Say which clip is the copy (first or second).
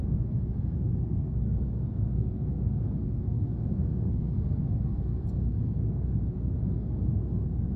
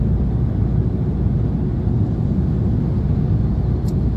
first